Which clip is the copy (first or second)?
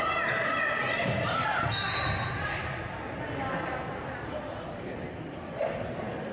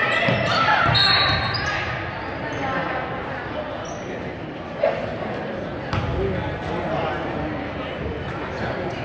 first